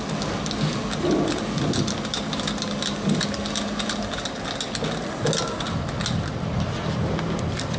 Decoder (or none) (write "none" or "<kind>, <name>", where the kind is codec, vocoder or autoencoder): none